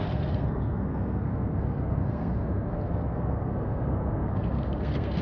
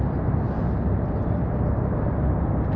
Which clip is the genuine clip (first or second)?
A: second